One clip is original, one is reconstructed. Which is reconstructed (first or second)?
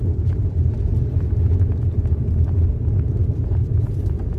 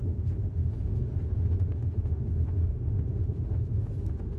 second